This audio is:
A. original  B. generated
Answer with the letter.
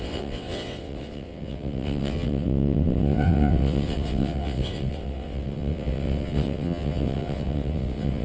B